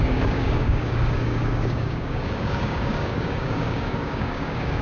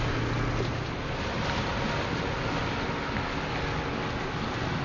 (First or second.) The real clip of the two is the second